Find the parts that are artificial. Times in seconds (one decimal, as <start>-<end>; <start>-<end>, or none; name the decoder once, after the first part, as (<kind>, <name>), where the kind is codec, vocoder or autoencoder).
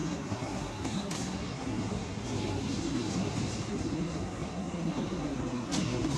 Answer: 0.0-6.2 (codec, SNAC)